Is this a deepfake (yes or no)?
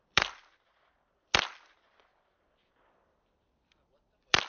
yes